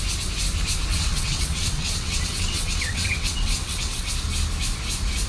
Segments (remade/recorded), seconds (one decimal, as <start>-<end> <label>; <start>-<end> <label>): 0.0-0.9 recorded; 0.9-4.1 remade; 4.1-5.3 recorded